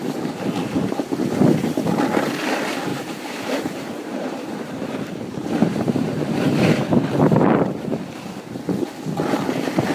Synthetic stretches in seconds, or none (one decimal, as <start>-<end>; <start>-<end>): 2.9-4.9; 5.6-6.7